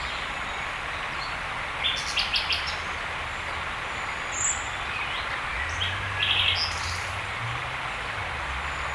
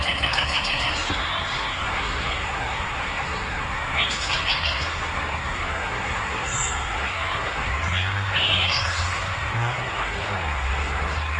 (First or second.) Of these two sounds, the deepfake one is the second